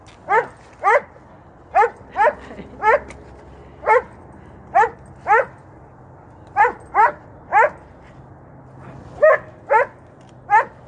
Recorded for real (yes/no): yes